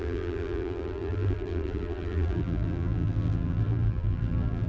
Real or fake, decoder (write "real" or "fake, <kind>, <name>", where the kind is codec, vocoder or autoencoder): fake, vocoder, BigVGAN v2